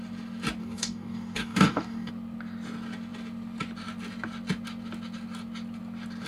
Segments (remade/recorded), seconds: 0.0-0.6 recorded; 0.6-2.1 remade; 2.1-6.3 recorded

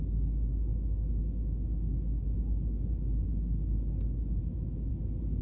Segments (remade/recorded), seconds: 0.0-0.7 recorded; 0.7-2.1 remade; 2.1-5.4 recorded

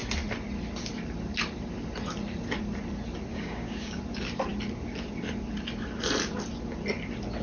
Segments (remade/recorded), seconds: 0.0-3.3 recorded; 3.3-4.0 remade; 4.0-7.4 recorded

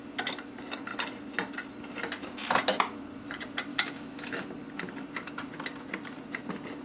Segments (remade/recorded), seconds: 0.0-3.7 recorded; 3.7-4.4 remade; 4.4-6.8 recorded

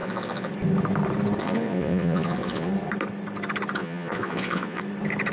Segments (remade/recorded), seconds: 0.0-0.5 remade; 0.5-1.4 recorded; 1.4-2.7 remade; 2.7-3.8 recorded; 3.8-4.8 remade; 4.8-5.3 recorded

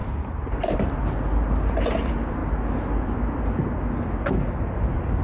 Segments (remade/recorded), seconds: 0.0-1.0 remade; 1.0-5.2 recorded